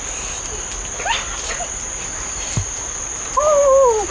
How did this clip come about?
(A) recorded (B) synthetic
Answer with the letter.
A